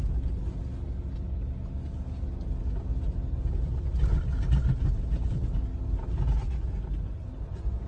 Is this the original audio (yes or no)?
yes